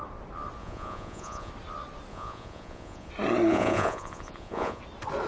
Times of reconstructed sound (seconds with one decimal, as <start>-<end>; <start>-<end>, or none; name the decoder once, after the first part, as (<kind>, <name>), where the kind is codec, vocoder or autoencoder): 0.6-1.5 (vocoder, Vocos); 2.1-3.1; 3.5-4.8